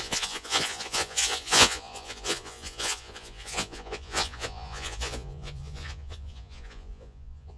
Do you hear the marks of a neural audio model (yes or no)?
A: yes